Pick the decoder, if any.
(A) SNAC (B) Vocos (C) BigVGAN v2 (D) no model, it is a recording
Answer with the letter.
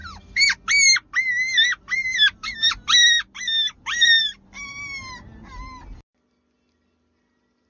D